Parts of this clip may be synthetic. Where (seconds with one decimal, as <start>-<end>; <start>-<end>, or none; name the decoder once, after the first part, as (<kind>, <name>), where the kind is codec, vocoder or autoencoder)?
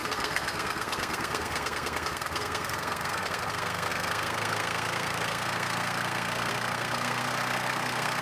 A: 0.0-8.2 (codec, SNAC)